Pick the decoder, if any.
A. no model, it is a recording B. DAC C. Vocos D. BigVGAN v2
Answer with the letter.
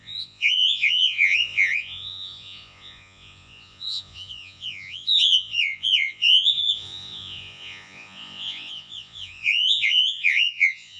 C